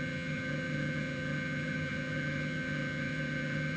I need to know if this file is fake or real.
fake